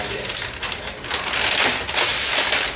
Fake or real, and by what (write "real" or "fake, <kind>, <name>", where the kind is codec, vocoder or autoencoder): real